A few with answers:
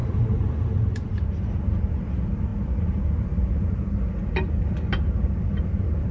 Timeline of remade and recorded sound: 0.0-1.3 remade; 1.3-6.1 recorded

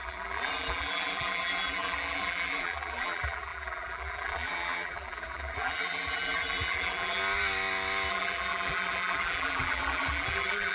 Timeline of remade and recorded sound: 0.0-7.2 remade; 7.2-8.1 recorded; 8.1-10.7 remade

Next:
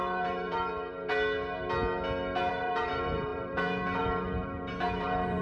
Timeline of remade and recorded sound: 0.0-0.7 remade; 0.7-2.5 recorded; 2.5-5.4 remade

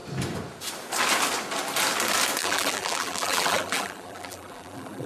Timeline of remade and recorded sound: 0.0-2.4 recorded; 2.4-5.1 remade